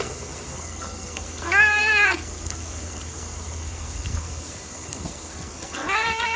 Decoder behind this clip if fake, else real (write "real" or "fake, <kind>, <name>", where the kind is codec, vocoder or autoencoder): fake, codec, SNAC